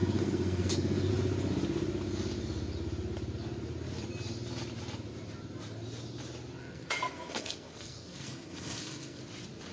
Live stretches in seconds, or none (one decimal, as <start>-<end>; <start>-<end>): 1.1-6.6; 9.2-9.7